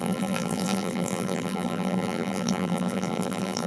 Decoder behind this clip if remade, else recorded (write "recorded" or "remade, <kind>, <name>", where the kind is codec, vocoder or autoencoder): remade, vocoder, BigVGAN v2